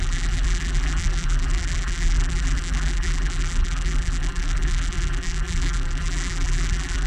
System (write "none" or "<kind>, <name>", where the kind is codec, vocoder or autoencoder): vocoder, BigVGAN v2